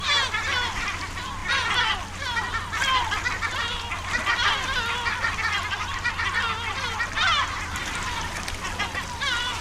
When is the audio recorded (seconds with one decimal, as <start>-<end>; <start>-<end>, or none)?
0.0-9.6